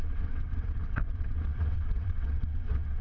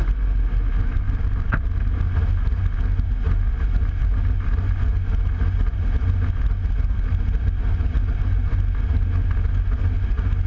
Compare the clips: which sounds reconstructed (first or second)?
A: first